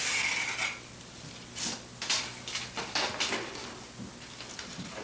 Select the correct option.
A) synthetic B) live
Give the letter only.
B